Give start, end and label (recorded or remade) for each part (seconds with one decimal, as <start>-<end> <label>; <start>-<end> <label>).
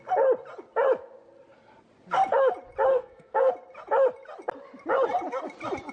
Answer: 0.0-2.9 recorded; 2.9-3.5 remade; 3.5-5.9 recorded